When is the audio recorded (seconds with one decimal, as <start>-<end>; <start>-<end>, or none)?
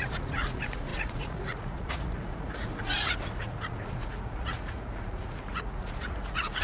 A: none